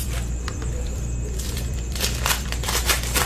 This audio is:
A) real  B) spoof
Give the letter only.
B